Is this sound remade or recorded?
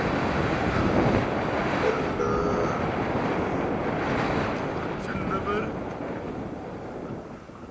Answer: recorded